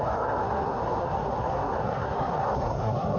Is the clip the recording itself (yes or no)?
no